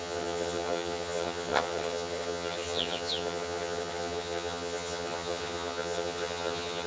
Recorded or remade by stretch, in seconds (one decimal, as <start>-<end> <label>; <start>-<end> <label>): 0.0-6.9 remade